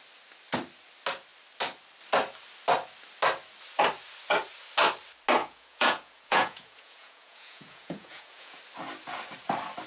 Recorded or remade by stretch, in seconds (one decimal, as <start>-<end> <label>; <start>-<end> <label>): 0.0-5.4 recorded; 5.4-8.6 remade; 8.6-9.9 recorded